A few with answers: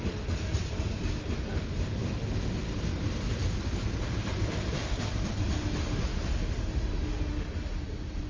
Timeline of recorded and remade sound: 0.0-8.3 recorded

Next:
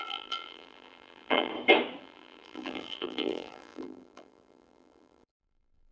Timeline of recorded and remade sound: 0.0-1.5 remade; 1.5-2.0 recorded; 2.0-5.9 remade

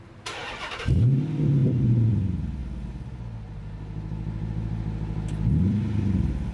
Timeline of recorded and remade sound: 0.0-2.6 remade; 2.6-5.5 recorded; 5.5-6.5 remade

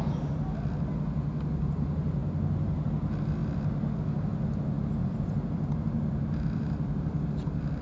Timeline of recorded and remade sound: 0.0-5.0 recorded; 5.0-7.2 remade; 7.2-7.8 recorded

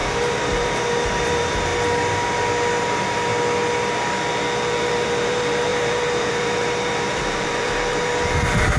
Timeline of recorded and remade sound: 0.0-1.7 remade; 1.7-2.7 recorded; 2.7-3.3 remade; 3.3-4.8 recorded; 4.8-8.8 remade

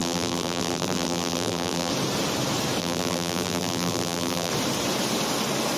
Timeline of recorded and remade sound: 0.0-1.9 remade; 1.9-2.8 recorded; 2.8-4.5 remade; 4.5-5.8 recorded